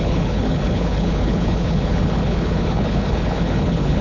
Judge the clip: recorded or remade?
remade